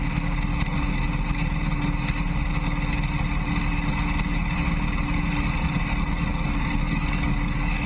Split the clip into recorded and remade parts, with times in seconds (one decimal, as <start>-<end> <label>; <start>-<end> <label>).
0.0-6.3 recorded; 6.3-7.9 remade